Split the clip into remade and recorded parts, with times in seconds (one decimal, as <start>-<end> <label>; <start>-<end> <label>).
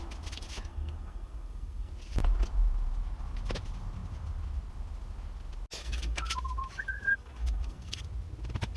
0.0-0.7 recorded; 0.7-1.9 remade; 1.9-5.8 recorded; 5.8-6.3 remade; 6.3-7.1 recorded; 7.1-8.0 remade; 8.0-8.8 recorded